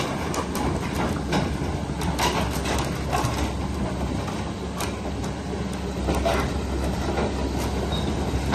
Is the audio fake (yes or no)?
no